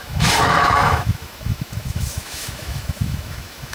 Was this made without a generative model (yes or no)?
no